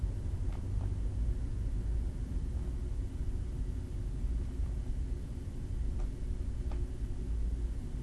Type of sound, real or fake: real